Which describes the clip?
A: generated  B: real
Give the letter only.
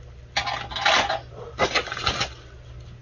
B